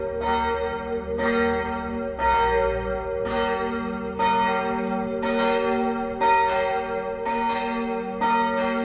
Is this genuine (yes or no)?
yes